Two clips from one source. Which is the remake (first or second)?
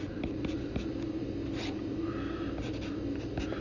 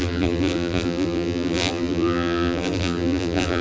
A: second